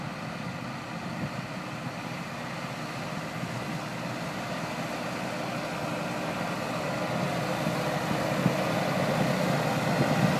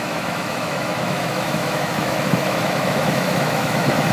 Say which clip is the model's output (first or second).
second